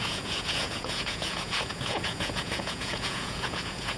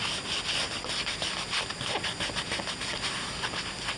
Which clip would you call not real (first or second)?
first